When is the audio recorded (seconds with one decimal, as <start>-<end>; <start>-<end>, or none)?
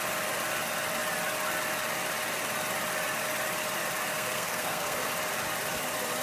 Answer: 0.0-4.1; 5.1-6.2